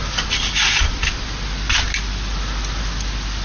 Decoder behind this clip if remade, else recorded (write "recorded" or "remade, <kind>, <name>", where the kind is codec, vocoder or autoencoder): recorded